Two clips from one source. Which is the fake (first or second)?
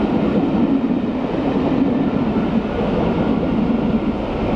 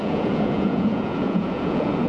second